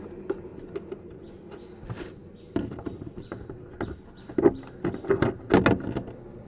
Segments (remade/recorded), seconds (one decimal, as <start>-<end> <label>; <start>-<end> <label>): 0.0-6.5 recorded